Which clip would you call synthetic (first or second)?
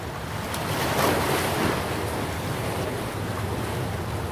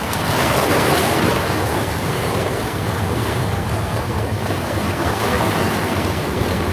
second